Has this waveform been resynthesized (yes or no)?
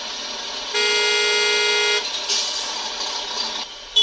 no